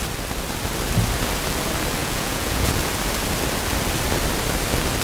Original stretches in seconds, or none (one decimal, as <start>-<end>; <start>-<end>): 0.0-2.0; 2.7-5.0